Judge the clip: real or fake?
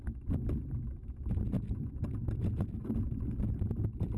real